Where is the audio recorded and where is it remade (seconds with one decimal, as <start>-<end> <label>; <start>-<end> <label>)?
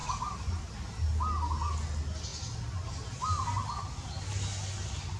0.0-5.2 recorded